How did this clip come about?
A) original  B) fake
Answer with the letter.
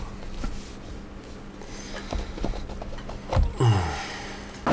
A